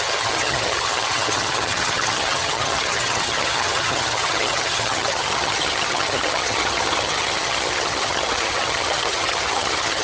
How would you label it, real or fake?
fake